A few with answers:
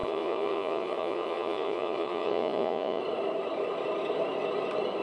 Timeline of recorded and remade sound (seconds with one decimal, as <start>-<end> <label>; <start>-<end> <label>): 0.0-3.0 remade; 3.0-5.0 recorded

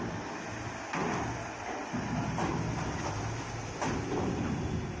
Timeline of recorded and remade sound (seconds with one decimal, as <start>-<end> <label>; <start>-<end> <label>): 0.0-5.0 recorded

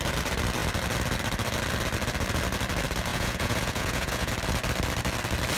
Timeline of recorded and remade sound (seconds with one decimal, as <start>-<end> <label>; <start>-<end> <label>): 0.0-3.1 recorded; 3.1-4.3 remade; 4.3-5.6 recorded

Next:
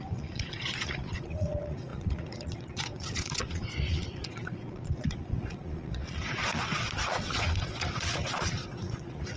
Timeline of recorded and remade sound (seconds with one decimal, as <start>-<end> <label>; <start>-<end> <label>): 0.0-9.4 remade